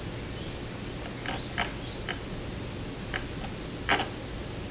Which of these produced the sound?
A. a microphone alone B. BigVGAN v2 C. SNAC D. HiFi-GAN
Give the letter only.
A